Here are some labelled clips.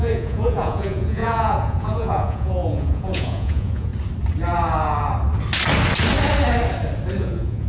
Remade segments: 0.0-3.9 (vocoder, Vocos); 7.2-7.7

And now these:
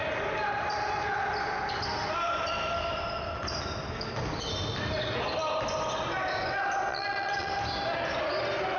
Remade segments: 6.9-7.5 (vocoder, Vocos)

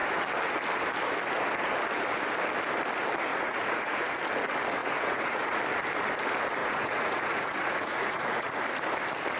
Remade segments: 3.3-4.2 (vocoder, Vocos); 4.8-5.6; 6.6-8.6

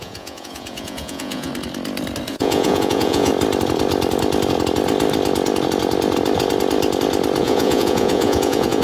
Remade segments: 0.0-1.5 (vocoder, Vocos); 2.3-3.3; 7.4-8.8

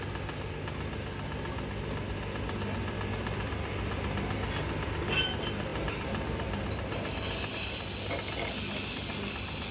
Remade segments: none

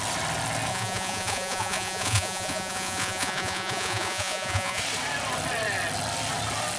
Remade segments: 0.7-4.8 (vocoder, Vocos)